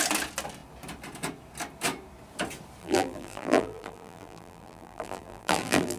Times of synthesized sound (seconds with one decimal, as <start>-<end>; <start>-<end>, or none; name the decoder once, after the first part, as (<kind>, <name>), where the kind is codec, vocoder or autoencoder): 2.8-6.0 (vocoder, BigVGAN v2)